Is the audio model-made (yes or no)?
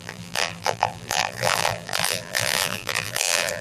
yes